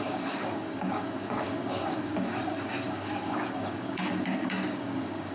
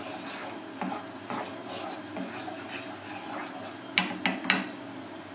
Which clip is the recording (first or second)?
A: second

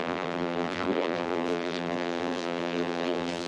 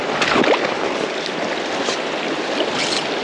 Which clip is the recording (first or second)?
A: second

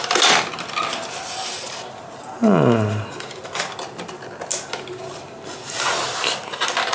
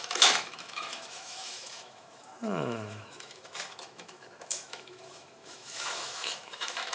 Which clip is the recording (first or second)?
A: first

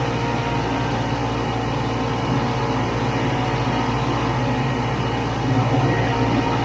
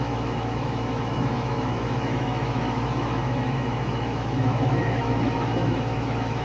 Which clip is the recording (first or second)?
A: first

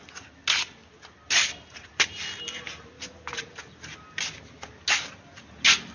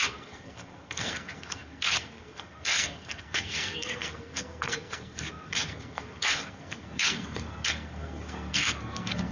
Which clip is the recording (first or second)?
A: first